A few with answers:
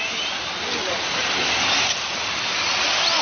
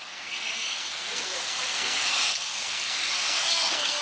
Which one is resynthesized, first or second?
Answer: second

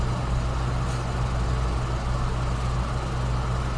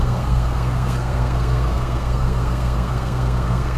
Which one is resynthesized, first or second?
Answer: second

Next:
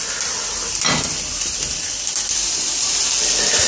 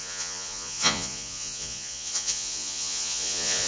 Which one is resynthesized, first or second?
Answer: second